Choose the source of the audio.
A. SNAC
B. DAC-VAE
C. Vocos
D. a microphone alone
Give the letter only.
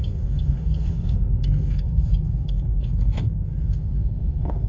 A